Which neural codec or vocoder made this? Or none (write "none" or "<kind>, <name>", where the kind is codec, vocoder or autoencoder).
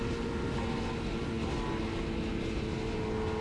none